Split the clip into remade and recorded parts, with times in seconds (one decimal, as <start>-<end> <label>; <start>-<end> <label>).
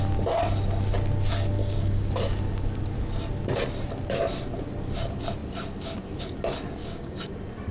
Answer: 0.0-1.6 recorded; 1.6-2.1 remade; 2.1-6.8 recorded; 6.8-7.3 remade; 7.3-7.7 recorded